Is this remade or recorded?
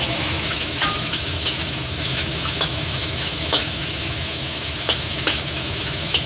remade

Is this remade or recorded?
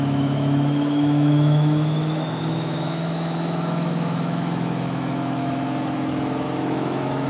remade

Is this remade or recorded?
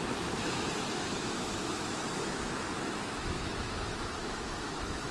remade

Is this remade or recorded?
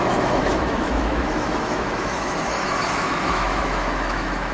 remade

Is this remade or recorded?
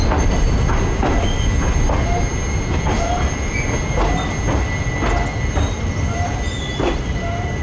recorded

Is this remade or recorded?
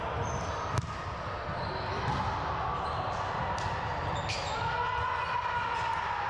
recorded